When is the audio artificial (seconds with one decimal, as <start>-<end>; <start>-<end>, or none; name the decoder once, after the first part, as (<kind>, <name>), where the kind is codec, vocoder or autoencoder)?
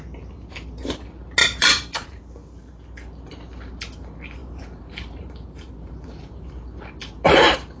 1.4-2.2 (vocoder, BigVGAN v2); 4.4-7.8